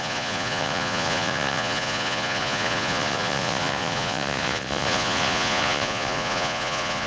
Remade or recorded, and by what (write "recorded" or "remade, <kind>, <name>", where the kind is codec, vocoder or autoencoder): remade, vocoder, Vocos